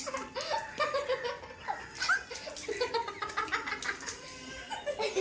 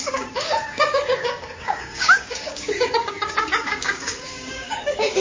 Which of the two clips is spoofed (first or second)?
second